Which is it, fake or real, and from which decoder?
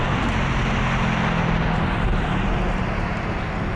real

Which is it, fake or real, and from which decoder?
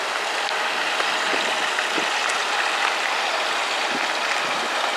real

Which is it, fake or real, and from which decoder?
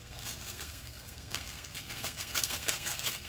fake, codec, SNAC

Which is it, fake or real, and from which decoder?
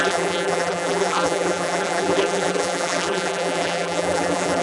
fake, vocoder, BigVGAN v2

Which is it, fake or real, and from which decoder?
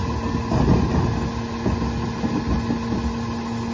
real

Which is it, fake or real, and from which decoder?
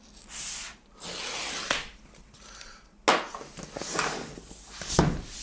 real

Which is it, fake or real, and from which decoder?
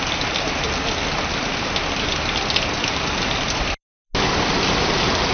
real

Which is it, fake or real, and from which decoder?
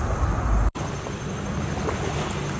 real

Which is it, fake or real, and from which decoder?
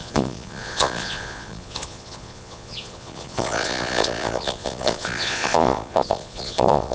fake, vocoder, Vocos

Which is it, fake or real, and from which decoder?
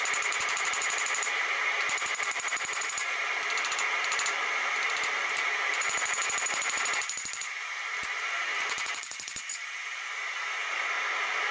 fake, vocoder, BigVGAN v2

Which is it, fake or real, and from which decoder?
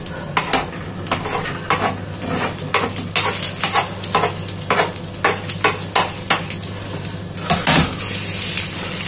real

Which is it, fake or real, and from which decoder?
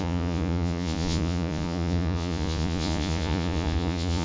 fake, vocoder, Vocos